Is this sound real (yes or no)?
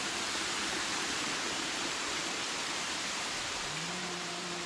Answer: no